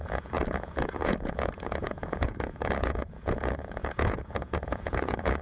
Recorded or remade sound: remade